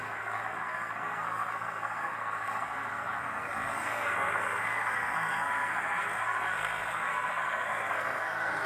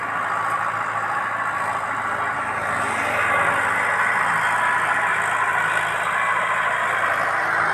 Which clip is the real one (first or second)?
second